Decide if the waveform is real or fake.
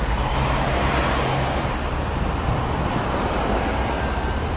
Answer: real